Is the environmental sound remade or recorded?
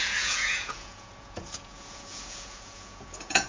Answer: remade